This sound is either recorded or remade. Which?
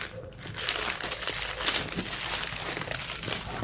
recorded